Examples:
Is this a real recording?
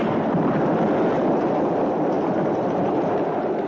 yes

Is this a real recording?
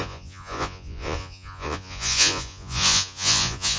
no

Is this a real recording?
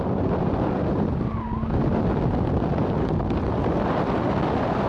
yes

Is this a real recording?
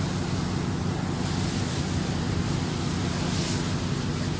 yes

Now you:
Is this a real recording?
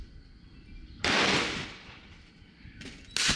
yes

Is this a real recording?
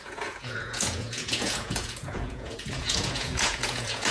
no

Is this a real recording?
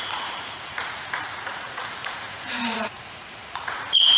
no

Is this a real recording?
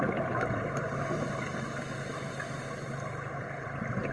yes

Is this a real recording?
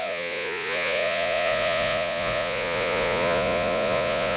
no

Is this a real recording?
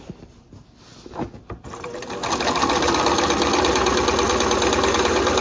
yes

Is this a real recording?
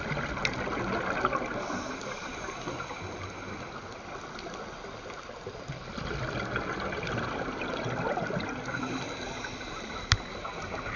yes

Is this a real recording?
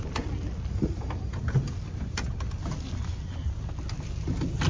yes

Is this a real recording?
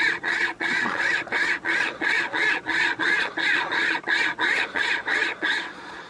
no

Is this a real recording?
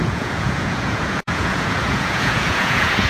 no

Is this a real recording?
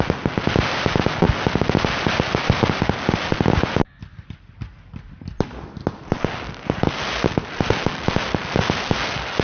yes